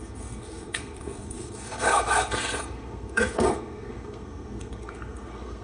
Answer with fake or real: fake